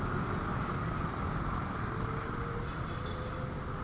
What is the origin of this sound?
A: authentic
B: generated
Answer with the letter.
A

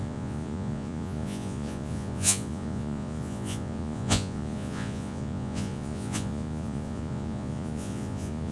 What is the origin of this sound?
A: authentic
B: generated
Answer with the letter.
B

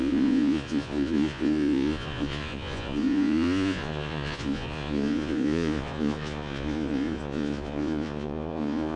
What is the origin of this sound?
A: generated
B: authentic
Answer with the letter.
A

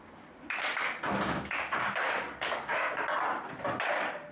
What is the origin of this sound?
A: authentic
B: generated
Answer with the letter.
A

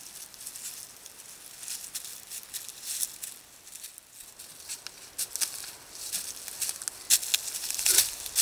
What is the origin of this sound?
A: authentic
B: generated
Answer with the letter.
A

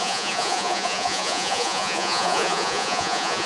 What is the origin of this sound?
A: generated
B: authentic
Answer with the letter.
A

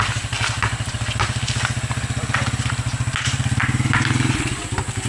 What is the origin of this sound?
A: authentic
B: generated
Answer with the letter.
A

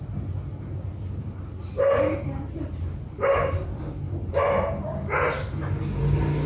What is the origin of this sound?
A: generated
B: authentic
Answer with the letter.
B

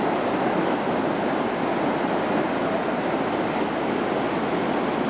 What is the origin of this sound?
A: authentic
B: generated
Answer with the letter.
A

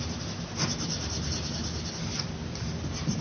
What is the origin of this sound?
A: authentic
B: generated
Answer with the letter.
A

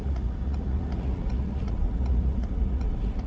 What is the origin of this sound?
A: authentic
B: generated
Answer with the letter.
B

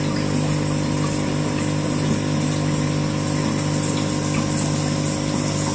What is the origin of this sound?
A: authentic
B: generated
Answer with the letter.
A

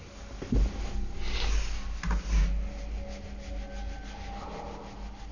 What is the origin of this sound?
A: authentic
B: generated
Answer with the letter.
A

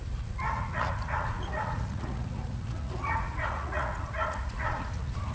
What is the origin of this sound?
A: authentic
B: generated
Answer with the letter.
B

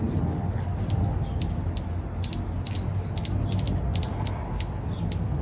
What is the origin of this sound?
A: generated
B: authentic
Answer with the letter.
B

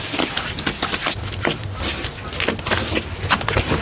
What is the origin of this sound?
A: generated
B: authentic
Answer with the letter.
B